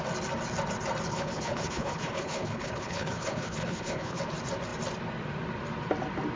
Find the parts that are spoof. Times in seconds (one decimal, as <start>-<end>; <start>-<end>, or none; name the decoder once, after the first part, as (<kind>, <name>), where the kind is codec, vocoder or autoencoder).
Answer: 1.1-4.2 (codec, HILCodec)